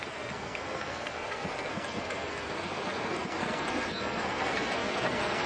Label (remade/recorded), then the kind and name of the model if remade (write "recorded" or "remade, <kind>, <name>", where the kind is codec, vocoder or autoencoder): remade, codec, SNAC